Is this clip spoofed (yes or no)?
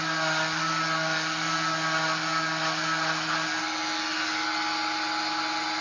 no